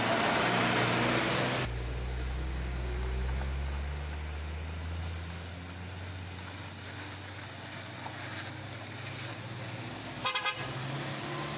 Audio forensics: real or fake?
real